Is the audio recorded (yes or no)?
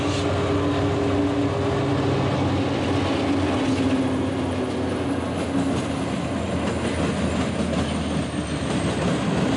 yes